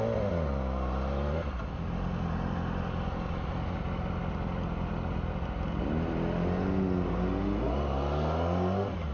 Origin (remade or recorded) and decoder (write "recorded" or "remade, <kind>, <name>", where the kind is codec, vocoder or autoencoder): recorded